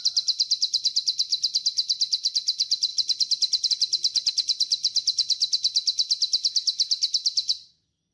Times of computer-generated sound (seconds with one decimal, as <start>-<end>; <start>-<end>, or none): none